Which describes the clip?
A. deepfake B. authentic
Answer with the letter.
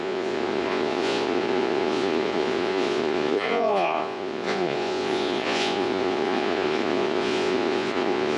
A